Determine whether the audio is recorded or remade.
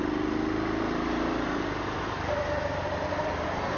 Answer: recorded